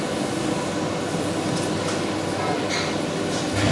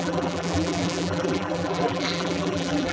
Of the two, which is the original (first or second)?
first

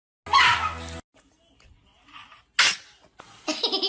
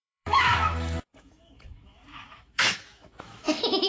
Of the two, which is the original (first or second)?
first